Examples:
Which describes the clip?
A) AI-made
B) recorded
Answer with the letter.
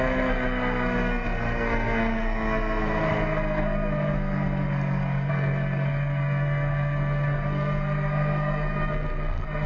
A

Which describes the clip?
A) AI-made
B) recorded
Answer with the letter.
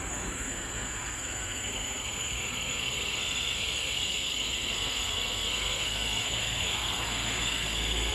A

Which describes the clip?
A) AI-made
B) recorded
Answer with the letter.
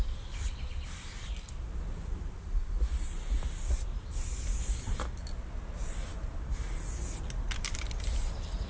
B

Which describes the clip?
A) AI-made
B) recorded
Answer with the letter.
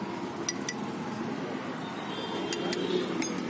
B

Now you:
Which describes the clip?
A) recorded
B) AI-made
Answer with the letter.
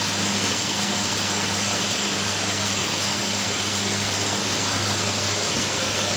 B